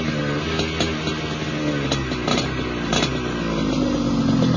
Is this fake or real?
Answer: real